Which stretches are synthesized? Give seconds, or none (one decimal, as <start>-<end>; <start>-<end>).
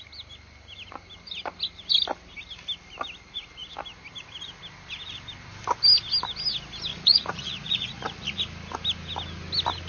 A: 6.9-8.4